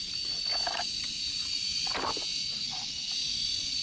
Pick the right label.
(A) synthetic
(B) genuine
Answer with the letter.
B